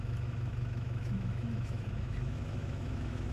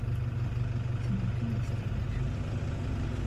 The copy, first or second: first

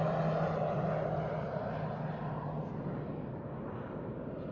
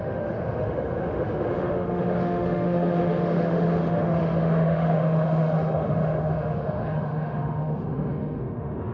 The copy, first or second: second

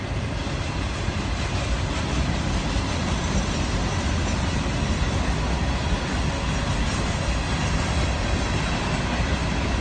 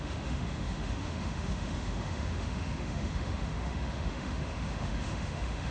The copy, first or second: second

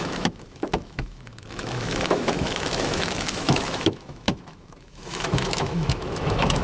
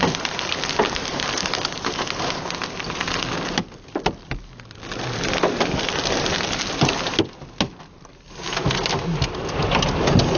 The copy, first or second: first